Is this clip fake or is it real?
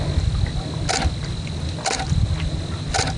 real